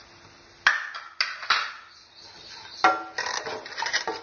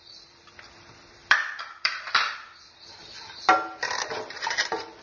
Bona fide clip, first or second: first